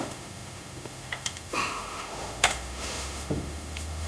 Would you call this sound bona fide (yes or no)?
no